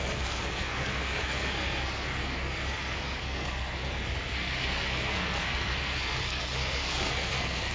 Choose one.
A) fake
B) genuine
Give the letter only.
A